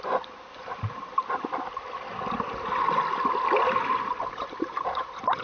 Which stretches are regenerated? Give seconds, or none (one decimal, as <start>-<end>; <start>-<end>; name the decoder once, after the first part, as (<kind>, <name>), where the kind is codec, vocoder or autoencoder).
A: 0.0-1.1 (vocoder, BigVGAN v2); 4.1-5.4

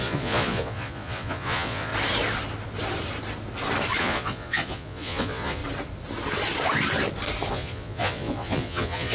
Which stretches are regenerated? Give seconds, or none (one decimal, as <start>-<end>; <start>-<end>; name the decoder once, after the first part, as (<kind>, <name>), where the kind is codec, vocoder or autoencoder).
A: 0.0-1.9 (vocoder, Vocos); 4.0-5.6; 7.5-9.1

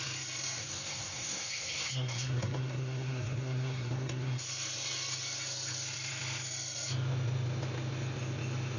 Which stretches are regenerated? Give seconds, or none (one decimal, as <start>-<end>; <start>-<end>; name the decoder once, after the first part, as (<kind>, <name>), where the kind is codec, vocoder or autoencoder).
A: 0.6-4.4 (codec, SNAC)

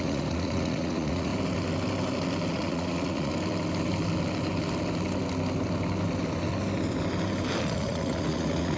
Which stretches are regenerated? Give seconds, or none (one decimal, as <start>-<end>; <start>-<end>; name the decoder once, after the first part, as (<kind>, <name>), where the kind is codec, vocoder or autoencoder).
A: 0.0-1.3 (vocoder, Vocos); 2.5-3.3; 7.6-8.8

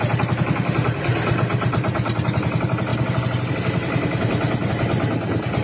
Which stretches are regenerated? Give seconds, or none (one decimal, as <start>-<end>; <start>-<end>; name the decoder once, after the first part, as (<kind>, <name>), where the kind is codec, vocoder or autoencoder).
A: none

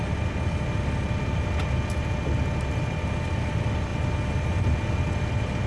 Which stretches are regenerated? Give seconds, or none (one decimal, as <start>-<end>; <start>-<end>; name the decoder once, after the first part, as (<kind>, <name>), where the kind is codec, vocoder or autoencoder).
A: 3.4-3.9 (vocoder, BigVGAN v2)

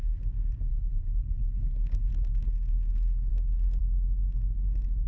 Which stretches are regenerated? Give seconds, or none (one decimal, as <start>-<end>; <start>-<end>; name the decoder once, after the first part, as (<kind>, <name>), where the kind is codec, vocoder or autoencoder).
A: 0.7-2.1 (codec, HILCodec)